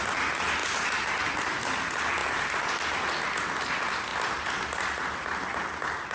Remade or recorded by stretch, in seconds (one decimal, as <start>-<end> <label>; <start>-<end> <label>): 0.0-6.1 recorded